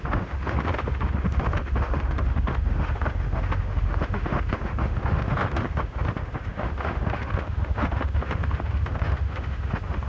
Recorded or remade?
remade